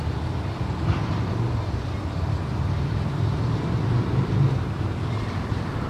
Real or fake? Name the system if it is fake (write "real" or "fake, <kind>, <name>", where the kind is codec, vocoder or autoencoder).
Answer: fake, vocoder, BigVGAN v2